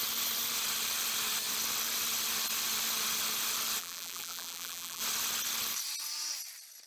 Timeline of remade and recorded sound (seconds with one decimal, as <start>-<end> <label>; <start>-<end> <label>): 0.0-3.8 recorded; 3.8-5.0 remade; 5.0-6.9 recorded